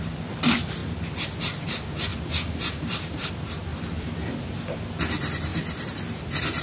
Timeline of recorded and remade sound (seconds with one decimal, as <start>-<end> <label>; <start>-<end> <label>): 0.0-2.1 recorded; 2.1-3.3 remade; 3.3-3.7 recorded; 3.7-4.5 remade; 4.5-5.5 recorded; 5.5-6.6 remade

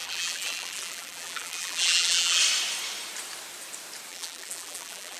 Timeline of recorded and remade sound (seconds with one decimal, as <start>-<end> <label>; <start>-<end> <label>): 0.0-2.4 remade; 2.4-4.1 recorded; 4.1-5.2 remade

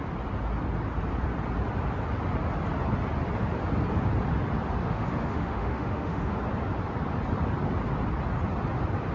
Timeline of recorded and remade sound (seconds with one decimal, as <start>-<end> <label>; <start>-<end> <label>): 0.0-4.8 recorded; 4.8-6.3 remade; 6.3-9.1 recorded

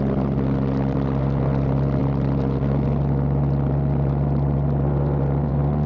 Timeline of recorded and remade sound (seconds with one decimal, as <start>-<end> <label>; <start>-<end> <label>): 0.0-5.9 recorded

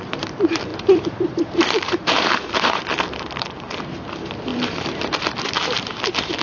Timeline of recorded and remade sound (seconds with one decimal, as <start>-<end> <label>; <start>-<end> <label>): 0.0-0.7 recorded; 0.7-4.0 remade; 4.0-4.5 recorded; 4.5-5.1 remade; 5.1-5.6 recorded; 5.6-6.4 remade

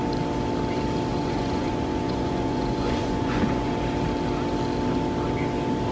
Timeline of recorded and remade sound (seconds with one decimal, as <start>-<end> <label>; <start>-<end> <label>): 0.0-1.1 recorded; 1.1-3.7 remade; 3.7-5.9 recorded